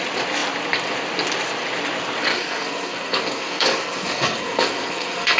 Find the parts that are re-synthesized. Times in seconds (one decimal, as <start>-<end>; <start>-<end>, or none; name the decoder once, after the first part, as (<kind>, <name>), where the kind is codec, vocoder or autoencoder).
2.3-5.4 (codec, SNAC)